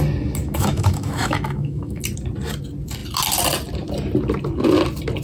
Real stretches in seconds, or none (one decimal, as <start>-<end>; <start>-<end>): 0.0-0.4; 2.0-5.2